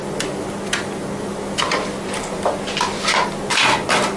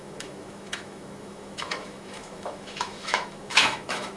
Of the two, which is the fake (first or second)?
second